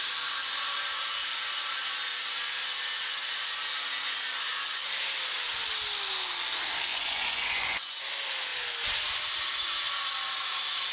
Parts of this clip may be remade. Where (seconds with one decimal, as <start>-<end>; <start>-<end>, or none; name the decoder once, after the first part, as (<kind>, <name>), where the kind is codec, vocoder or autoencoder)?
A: 6.9-8.0 (vocoder, Vocos)